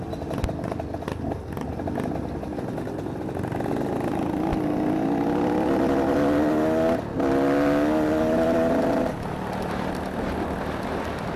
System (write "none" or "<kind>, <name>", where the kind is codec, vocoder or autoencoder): none